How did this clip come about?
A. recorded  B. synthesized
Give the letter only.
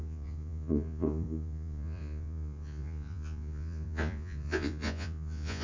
B